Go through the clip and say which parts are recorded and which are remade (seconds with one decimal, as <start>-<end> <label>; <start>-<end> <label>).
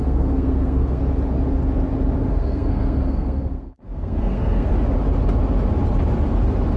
0.0-1.0 remade; 1.0-2.3 recorded; 2.3-4.7 remade; 4.7-6.8 recorded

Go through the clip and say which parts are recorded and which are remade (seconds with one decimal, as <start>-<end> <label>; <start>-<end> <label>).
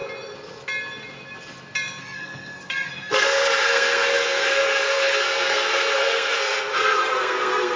0.0-2.0 recorded; 2.0-7.8 remade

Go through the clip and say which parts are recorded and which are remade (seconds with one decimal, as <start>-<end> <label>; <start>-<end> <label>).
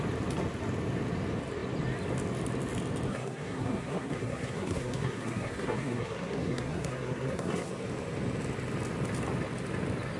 0.0-3.1 recorded; 3.1-7.7 remade; 7.7-10.2 recorded